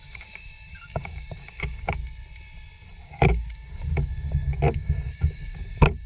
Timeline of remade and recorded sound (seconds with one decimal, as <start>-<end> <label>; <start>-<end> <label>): 0.0-2.0 remade; 2.0-3.0 recorded; 3.0-6.1 remade